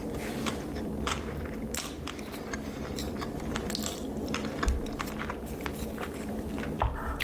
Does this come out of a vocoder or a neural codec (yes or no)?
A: yes